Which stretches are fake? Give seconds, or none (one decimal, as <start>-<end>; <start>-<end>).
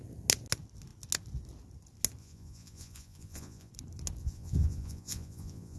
2.2-3.7; 4.2-5.8